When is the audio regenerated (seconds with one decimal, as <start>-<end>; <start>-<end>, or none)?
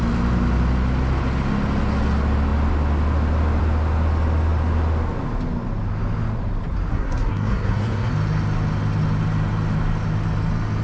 6.9-8.1